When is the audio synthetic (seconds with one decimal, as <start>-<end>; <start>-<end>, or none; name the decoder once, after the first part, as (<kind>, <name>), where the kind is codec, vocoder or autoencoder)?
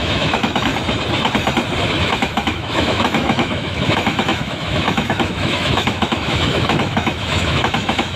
0.0-0.7 (autoencoder, DAC-VAE); 2.0-8.2